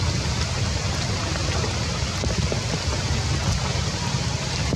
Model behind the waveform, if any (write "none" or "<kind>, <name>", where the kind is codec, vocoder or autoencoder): none